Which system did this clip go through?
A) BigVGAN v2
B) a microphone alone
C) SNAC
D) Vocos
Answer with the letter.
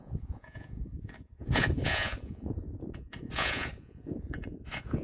D